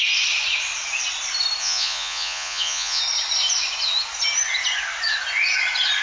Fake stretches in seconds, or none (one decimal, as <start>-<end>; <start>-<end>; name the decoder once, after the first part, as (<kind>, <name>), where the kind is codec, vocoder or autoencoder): 1.6-3.0 (vocoder, Vocos)